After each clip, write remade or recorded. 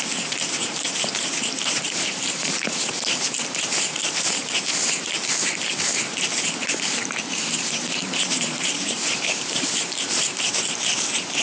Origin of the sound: remade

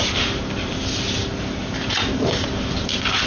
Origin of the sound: recorded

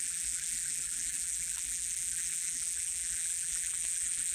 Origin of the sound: remade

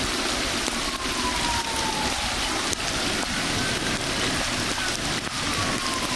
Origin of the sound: recorded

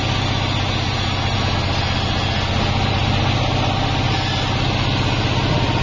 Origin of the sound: recorded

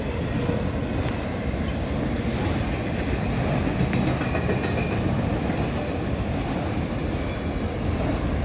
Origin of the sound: recorded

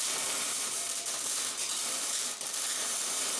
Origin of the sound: remade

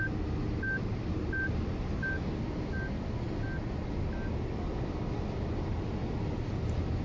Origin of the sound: recorded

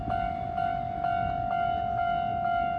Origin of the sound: recorded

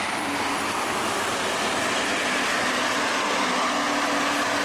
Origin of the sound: recorded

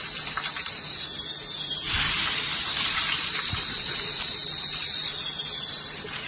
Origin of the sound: remade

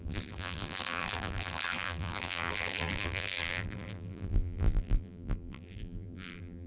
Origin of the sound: remade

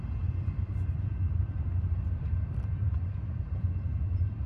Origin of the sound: remade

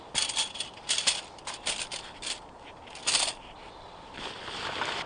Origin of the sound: remade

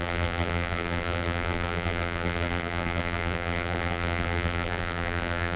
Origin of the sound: remade